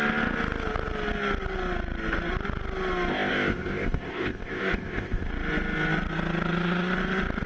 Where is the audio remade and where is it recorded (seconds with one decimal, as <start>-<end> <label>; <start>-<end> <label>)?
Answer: 0.0-3.1 recorded; 3.1-5.3 remade; 5.3-7.5 recorded

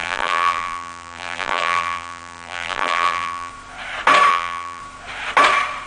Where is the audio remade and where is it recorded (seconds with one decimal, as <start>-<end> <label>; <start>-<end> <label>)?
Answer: 0.0-3.5 remade; 3.5-4.3 recorded; 4.3-4.8 remade; 4.8-5.9 recorded

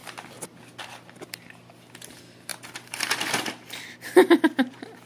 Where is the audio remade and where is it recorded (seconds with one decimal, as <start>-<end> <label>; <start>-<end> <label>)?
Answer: 0.0-0.8 recorded; 0.8-5.1 remade